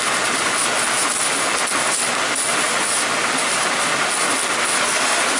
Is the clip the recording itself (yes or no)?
yes